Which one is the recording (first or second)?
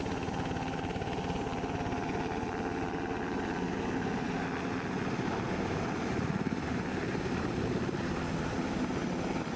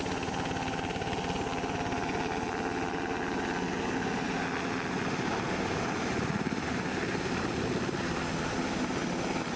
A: second